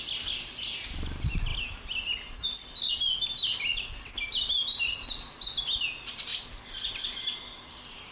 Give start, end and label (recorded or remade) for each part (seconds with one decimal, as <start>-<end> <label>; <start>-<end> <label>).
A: 0.0-8.1 recorded